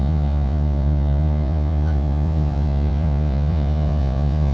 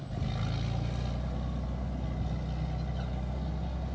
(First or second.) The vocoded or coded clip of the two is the first